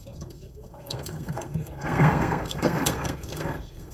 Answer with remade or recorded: remade